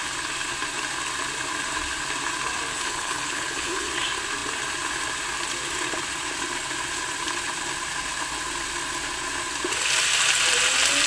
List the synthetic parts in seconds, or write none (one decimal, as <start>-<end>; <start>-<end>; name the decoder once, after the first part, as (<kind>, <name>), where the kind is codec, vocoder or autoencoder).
2.7-3.9 (codec, HILCodec)